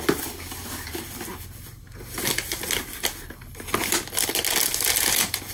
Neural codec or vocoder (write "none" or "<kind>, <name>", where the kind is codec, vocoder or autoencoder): none